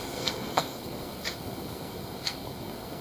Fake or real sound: fake